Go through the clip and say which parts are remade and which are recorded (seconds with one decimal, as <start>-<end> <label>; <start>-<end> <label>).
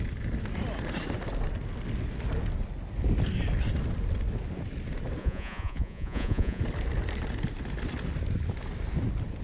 0.0-5.2 recorded; 5.2-6.6 remade; 6.6-9.4 recorded